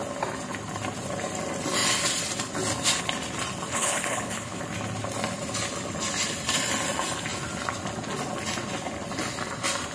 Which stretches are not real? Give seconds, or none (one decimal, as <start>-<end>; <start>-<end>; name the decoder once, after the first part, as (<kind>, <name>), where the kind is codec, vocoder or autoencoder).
3.7-4.6 (codec, HILCodec)